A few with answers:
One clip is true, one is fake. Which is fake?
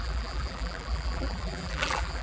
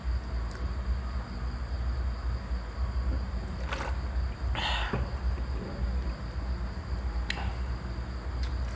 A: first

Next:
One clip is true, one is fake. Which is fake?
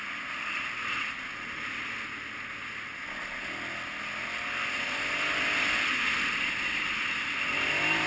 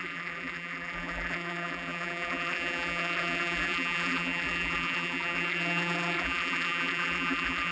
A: second